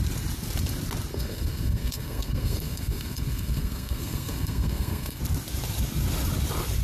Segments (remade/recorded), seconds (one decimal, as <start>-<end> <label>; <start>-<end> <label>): 0.0-1.1 recorded; 1.1-5.2 remade; 5.2-6.8 recorded